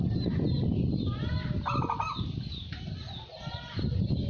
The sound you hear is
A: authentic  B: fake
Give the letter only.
A